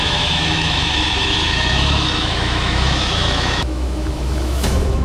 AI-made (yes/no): yes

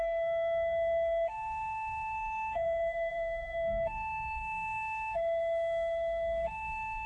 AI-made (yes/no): yes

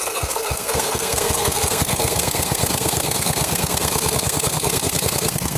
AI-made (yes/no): yes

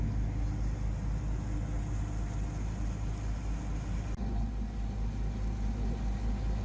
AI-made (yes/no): no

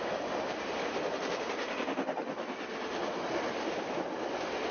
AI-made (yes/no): no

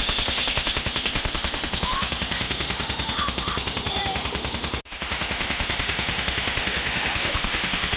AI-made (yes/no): yes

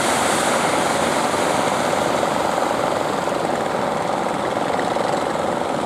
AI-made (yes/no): no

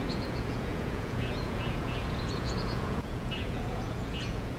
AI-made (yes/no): yes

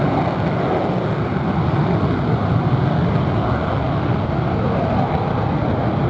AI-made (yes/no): no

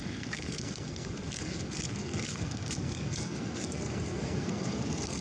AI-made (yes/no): yes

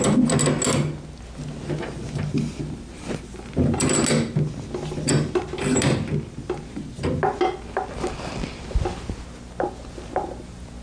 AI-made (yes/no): no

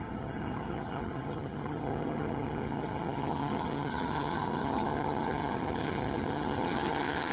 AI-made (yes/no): yes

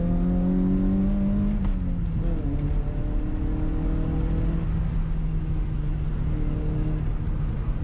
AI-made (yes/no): no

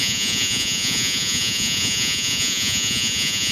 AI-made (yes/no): yes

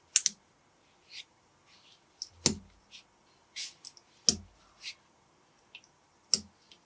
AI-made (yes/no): no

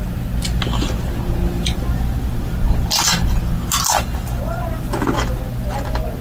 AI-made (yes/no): no